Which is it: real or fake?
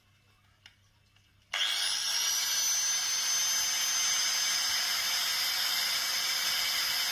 real